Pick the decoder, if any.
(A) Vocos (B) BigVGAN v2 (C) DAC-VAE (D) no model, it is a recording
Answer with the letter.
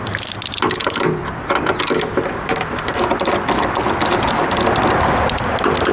B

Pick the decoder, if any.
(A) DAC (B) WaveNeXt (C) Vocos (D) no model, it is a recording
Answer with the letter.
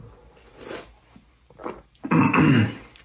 D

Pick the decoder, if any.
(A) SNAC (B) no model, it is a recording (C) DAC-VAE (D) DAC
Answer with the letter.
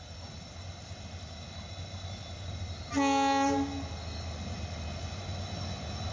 B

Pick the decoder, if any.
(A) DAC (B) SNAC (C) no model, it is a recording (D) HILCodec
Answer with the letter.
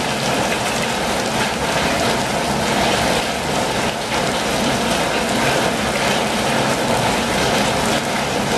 C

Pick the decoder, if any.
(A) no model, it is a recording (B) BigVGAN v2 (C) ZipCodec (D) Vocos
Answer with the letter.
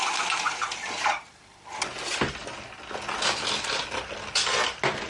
A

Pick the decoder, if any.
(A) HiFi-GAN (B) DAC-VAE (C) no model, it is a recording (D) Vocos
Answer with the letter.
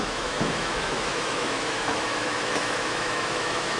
B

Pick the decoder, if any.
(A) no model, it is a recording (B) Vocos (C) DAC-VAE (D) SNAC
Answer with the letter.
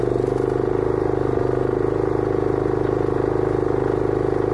A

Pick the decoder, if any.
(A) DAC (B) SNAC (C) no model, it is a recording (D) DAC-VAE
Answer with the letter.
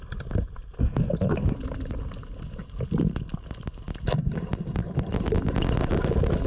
C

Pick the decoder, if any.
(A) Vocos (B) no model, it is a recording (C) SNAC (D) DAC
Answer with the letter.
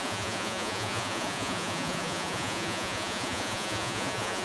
A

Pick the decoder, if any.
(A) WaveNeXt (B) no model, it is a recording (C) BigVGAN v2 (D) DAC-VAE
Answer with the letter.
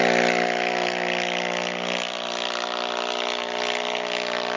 B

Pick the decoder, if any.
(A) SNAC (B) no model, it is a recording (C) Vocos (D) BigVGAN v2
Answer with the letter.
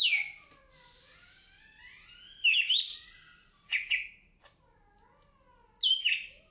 B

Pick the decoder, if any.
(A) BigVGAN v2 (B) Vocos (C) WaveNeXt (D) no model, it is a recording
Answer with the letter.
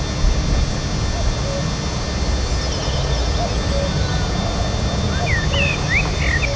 D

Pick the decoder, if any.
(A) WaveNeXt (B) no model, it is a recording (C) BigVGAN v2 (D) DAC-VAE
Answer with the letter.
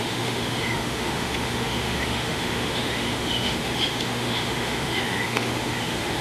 D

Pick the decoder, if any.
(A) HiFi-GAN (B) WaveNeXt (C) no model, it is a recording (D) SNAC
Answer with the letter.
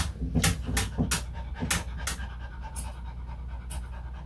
C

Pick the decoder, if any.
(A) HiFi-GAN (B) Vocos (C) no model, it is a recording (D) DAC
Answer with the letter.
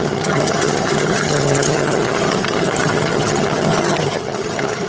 A